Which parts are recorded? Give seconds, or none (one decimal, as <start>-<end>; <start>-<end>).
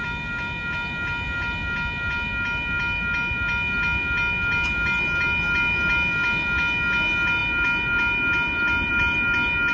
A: 0.0-9.7